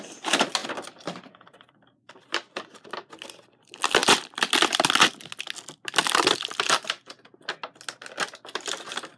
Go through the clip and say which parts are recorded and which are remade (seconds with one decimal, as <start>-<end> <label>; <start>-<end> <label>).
0.0-0.6 recorded; 0.6-3.1 remade; 3.1-4.0 recorded; 4.0-4.7 remade; 4.7-9.2 recorded